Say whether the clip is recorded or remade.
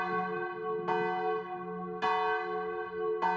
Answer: recorded